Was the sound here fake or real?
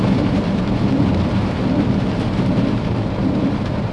fake